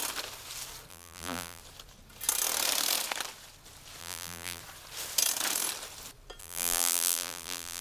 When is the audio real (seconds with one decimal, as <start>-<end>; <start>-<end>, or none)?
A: 0.0-0.9; 1.6-4.0; 4.6-6.4